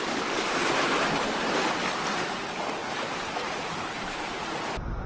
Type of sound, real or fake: real